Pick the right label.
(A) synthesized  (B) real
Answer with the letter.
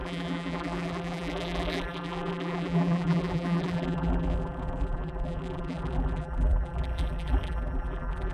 A